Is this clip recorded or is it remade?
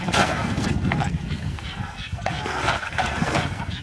remade